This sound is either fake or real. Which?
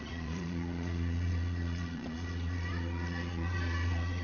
fake